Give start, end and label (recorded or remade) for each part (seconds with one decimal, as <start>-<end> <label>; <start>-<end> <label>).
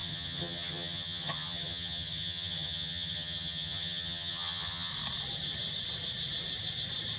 0.0-4.9 remade; 4.9-7.2 recorded